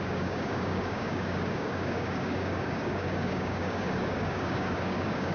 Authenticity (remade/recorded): remade